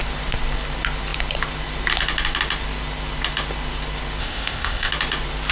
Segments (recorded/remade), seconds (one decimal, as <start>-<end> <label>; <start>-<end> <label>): 0.0-4.2 recorded; 4.2-4.9 remade; 4.9-5.5 recorded